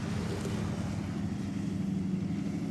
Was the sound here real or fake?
real